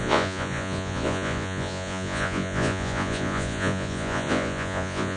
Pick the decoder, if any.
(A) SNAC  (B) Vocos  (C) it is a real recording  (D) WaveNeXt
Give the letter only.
B